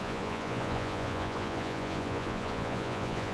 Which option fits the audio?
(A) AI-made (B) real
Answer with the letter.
A